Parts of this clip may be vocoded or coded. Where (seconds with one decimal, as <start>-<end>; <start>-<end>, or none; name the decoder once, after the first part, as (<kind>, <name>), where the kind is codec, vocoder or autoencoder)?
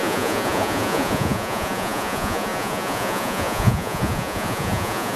0.0-5.2 (vocoder, Vocos)